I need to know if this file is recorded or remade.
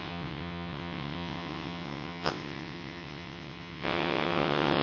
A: remade